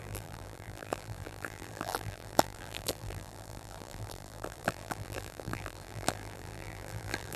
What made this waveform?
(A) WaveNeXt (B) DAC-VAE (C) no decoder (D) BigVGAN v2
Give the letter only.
D